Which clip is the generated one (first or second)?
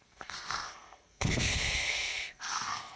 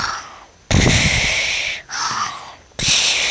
first